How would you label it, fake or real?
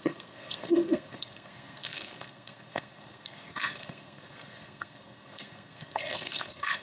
fake